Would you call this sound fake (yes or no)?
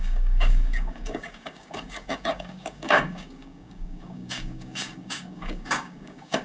yes